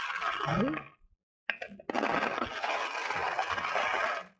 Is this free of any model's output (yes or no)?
yes